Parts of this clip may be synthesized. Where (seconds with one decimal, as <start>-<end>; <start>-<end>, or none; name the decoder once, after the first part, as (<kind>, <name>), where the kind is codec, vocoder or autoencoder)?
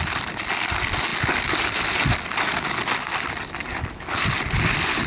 none